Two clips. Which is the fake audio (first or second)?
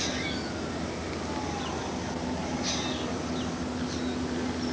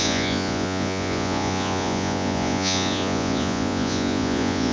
second